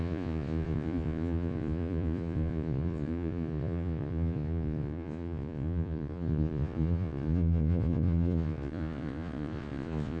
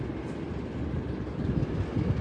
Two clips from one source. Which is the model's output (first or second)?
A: first